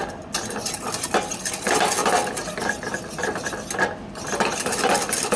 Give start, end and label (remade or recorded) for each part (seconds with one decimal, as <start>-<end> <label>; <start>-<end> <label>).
0.0-5.4 recorded